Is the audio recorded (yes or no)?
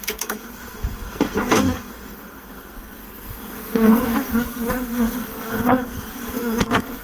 no